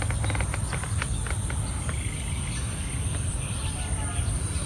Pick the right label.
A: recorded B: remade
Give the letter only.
A